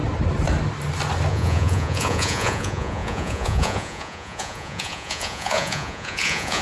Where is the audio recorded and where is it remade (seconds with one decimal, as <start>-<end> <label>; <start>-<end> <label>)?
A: 0.0-1.3 recorded; 1.3-6.6 remade